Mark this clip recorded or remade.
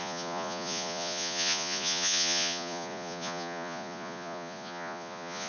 remade